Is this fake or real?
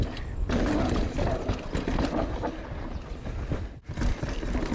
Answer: real